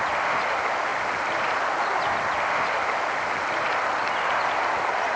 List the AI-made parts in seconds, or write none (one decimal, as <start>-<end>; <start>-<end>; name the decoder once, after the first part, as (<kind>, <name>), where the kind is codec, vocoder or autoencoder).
none